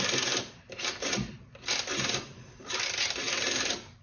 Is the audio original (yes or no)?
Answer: no